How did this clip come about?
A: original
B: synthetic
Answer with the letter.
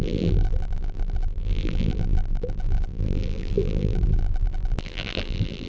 B